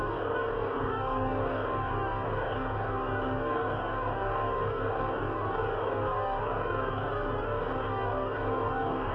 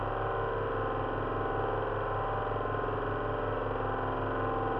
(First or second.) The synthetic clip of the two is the first